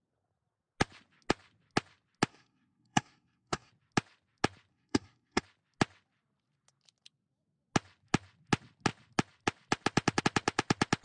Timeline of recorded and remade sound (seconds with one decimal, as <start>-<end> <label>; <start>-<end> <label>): 0.0-2.3 recorded; 2.3-3.7 remade; 3.7-4.7 recorded; 4.7-5.4 remade; 5.4-11.0 recorded